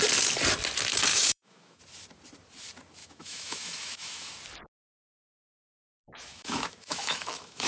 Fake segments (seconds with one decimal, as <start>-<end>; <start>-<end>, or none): 1.1-1.8; 3.0-4.3; 5.3-7.7